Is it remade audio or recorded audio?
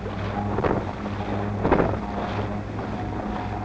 recorded